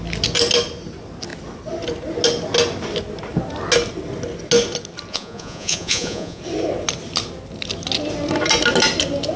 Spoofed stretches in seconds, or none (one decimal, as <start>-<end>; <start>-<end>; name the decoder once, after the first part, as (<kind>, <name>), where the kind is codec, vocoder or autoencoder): 5.1-6.4 (vocoder, Vocos)